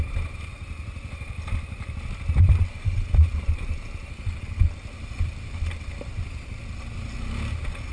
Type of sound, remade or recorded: recorded